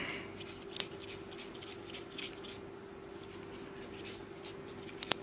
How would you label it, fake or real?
real